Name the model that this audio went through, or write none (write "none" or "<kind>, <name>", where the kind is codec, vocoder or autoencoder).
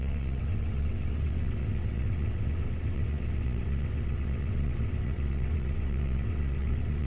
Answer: vocoder, WaveNeXt